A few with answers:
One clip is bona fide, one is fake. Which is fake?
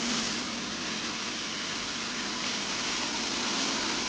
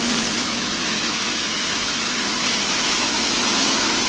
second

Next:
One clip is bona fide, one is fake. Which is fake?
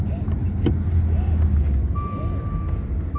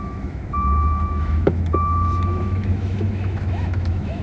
second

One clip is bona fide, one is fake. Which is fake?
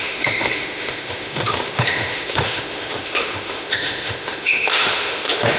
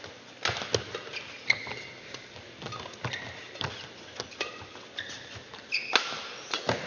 first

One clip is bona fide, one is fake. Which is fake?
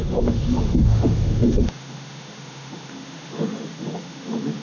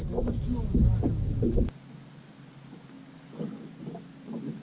first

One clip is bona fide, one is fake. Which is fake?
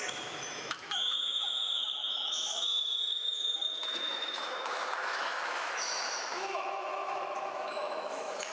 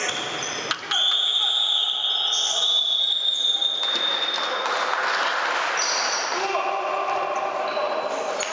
first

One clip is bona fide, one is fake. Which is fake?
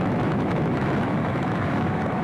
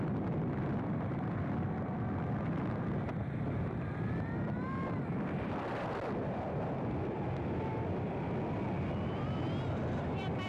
first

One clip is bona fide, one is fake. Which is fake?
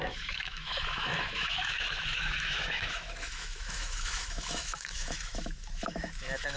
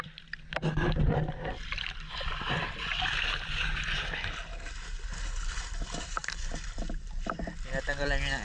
first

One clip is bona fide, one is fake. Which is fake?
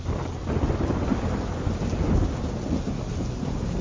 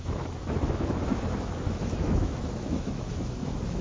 second